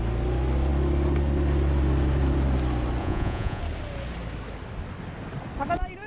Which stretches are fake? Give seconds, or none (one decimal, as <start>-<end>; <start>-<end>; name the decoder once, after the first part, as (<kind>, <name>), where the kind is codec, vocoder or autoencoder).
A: 3.0-3.6 (vocoder, Vocos)